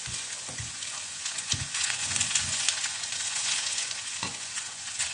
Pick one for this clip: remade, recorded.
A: remade